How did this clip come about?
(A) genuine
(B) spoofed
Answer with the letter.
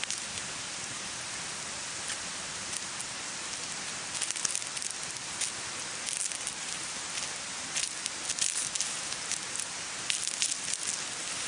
A